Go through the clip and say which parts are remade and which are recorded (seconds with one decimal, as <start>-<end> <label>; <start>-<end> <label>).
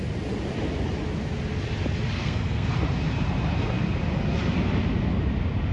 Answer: 0.0-2.2 recorded; 2.2-2.7 remade; 2.7-5.7 recorded